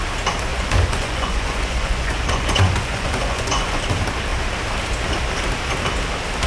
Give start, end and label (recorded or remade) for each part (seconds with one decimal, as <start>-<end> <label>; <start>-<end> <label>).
0.0-0.5 recorded; 0.5-3.8 remade; 3.8-6.5 recorded